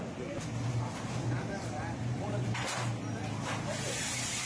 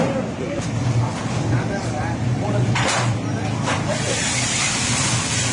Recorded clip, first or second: first